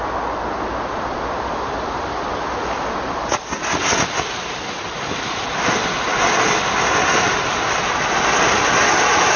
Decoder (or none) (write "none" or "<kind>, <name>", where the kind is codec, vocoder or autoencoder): none